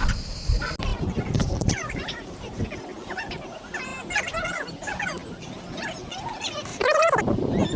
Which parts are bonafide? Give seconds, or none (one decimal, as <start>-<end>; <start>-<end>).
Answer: 0.0-0.9; 2.6-6.7; 7.2-7.8